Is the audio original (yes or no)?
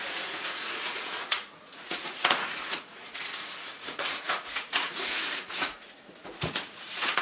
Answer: no